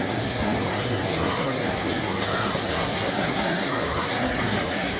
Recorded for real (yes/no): no